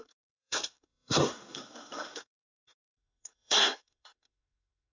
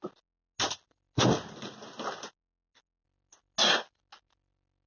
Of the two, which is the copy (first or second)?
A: first